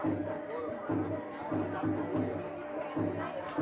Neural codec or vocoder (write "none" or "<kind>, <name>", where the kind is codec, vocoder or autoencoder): none